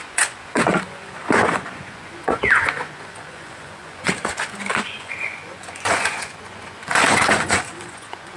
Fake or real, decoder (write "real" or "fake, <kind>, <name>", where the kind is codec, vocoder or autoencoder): fake, vocoder, Vocos